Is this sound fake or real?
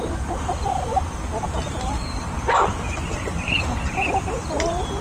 fake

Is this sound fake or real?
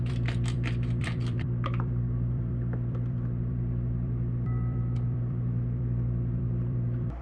fake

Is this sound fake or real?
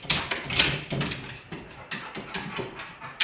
fake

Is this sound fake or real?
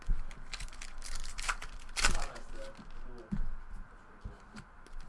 real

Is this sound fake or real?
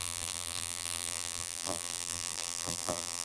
fake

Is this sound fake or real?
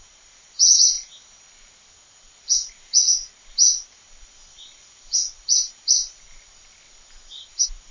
fake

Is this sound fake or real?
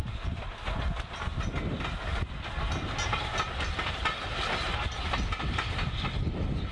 real